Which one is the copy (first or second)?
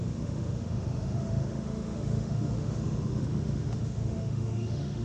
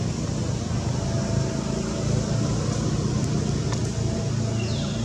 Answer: first